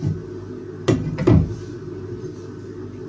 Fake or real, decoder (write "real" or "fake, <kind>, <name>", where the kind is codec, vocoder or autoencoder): real